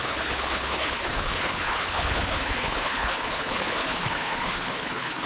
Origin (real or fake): fake